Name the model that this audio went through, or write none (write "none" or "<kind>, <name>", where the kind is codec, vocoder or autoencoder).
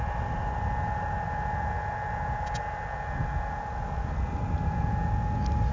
none